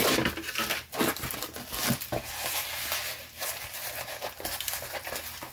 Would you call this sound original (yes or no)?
yes